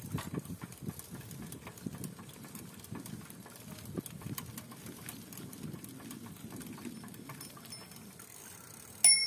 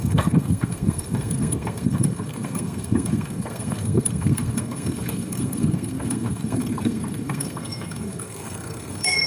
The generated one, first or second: second